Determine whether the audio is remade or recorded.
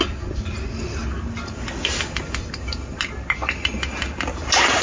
recorded